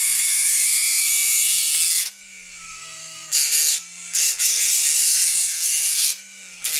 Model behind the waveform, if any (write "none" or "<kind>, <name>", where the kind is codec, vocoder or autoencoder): codec, SNAC